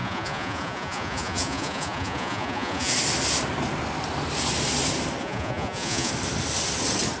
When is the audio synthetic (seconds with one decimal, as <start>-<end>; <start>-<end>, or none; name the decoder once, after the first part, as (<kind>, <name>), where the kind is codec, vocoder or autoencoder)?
0.0-2.9 (vocoder, Vocos); 5.2-6.1